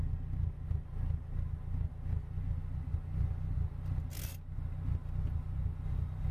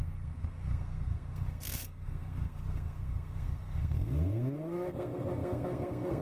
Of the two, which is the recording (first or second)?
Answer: first